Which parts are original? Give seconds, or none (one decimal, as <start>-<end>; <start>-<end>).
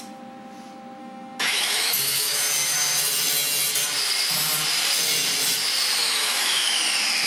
0.0-1.0; 2.4-6.0; 6.8-7.3